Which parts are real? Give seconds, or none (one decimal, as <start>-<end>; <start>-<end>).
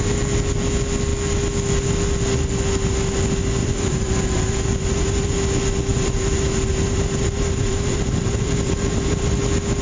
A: 0.0-3.6; 5.4-5.9; 9.3-9.8